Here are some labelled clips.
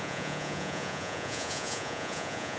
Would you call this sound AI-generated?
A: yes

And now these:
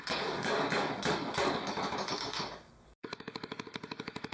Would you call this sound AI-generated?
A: yes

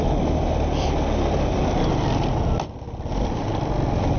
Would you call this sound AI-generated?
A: no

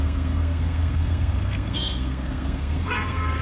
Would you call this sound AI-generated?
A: yes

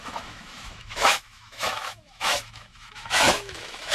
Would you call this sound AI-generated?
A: yes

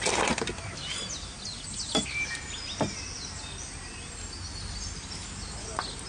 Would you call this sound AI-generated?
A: no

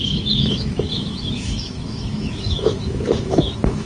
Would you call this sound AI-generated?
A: yes